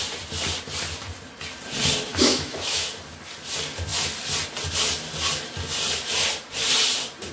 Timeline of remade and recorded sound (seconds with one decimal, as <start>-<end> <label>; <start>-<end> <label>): 0.0-2.1 recorded; 2.1-2.9 remade; 2.9-7.3 recorded